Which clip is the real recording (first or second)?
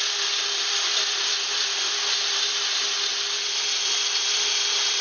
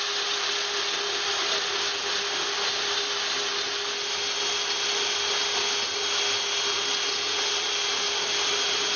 second